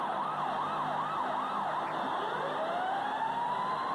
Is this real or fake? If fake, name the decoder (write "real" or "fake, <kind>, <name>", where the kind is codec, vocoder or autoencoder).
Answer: real